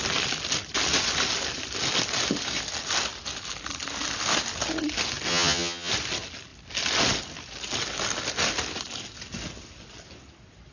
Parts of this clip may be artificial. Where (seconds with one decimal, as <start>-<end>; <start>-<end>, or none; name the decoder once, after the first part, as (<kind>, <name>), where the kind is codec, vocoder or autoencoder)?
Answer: 5.3-5.9 (vocoder, HiFi-GAN)